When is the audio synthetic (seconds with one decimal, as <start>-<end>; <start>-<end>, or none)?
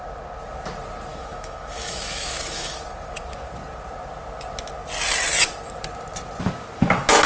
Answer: 1.1-2.8